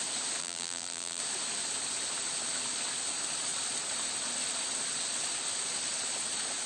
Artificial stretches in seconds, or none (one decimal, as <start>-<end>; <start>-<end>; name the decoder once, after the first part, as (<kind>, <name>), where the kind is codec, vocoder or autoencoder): 0.4-1.2 (vocoder, BigVGAN v2)